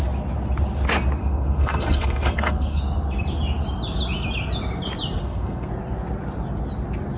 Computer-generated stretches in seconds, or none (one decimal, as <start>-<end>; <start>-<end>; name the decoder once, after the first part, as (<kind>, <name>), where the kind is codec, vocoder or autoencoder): 1.2-2.8 (codec, SNAC); 5.2-5.7